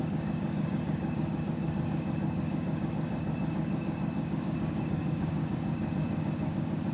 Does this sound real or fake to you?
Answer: fake